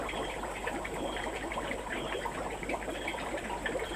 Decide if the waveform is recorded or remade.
remade